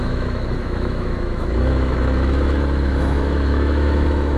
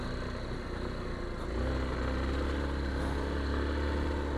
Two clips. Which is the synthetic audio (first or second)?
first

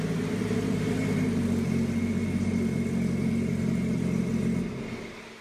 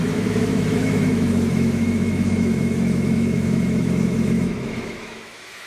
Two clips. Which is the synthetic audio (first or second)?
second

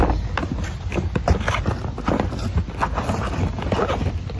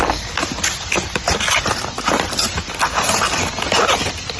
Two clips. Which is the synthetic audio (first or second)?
second